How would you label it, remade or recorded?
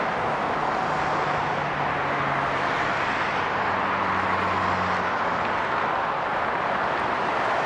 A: recorded